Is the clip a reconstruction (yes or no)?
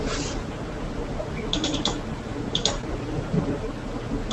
no